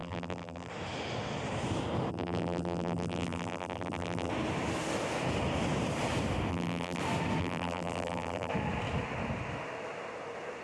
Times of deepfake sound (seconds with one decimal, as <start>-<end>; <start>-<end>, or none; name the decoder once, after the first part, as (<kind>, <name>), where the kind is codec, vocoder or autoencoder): 0.0-0.7 (vocoder, BigVGAN v2); 2.1-4.3; 6.5-7.0; 7.4-8.5